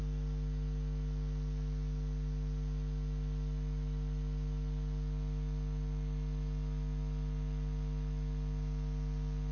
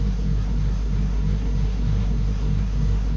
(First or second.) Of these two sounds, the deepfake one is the second